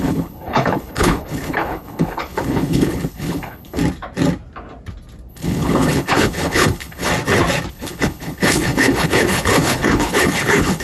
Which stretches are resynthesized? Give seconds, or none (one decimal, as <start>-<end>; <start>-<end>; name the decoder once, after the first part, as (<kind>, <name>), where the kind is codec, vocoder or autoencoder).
0.0-3.8 (codec, HILCodec); 5.3-7.1; 7.7-10.8